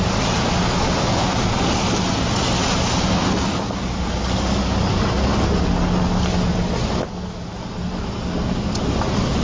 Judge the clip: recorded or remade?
recorded